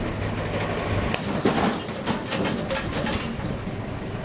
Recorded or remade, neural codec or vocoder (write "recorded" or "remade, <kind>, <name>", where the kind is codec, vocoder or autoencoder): recorded